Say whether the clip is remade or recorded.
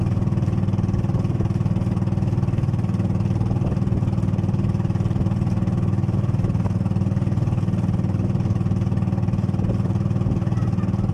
recorded